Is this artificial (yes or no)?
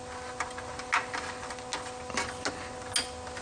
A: no